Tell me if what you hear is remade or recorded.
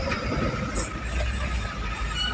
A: recorded